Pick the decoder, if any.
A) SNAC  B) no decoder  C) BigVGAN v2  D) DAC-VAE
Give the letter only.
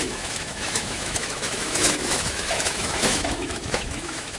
D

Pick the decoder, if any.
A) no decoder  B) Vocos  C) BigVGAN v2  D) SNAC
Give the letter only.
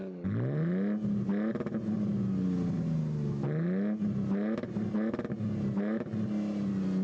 A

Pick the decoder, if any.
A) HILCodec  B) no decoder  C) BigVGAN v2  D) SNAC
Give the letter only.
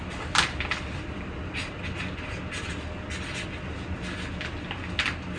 B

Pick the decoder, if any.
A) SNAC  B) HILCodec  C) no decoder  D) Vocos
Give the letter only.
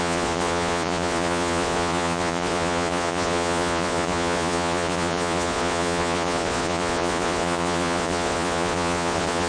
D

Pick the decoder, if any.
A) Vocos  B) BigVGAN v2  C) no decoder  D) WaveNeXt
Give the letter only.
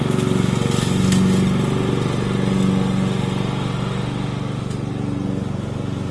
C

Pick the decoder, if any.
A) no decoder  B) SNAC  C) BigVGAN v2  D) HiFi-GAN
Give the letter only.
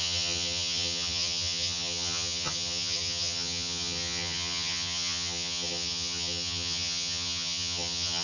D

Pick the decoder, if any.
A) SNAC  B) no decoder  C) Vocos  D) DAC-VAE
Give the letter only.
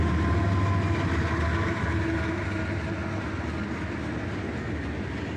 B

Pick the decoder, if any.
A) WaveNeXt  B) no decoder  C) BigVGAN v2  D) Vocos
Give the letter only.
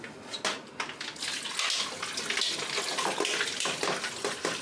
B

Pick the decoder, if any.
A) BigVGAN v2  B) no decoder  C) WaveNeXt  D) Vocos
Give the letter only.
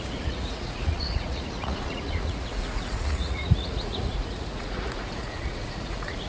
D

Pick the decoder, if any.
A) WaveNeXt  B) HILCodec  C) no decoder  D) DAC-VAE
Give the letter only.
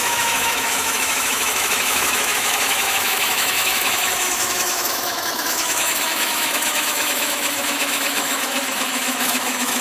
D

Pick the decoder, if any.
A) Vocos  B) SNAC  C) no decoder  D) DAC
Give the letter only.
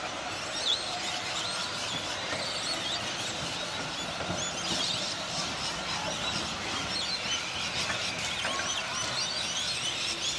C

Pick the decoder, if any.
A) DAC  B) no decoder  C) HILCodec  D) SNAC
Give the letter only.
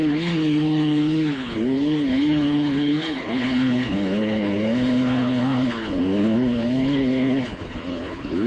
C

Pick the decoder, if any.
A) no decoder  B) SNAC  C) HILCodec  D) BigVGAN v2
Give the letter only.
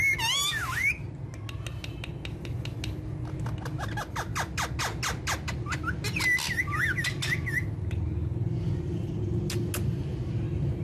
A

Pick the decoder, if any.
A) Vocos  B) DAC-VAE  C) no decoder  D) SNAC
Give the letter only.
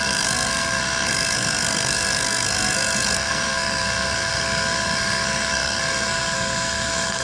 D